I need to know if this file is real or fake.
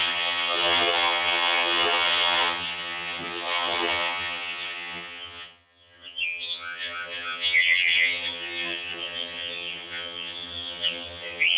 fake